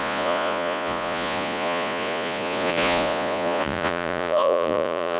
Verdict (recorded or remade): remade